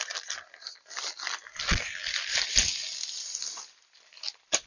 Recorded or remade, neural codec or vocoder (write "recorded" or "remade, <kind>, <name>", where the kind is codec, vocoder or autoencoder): recorded